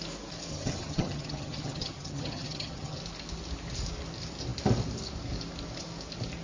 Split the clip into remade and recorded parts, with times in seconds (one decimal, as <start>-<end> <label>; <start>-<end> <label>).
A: 0.0-0.5 recorded; 0.5-3.0 remade; 3.0-6.4 recorded